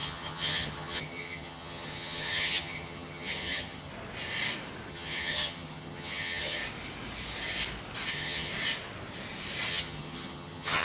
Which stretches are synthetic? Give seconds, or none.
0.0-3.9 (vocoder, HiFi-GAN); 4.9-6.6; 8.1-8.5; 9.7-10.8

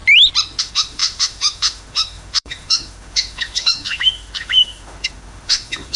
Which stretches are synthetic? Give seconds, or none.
0.6-6.0 (autoencoder, DAC-VAE)